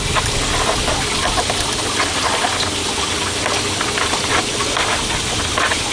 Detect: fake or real real